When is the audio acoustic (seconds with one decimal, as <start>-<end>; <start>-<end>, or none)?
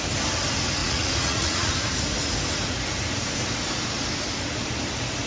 0.0-0.8; 1.7-5.3